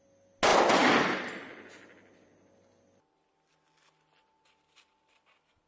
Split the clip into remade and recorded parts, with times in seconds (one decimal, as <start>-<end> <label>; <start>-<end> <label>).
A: 0.0-5.7 recorded